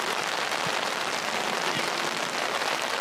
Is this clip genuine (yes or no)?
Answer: yes